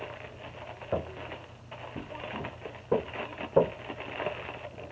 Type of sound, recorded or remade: recorded